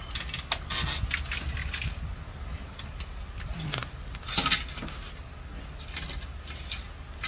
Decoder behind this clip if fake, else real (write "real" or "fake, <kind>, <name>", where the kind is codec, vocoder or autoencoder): real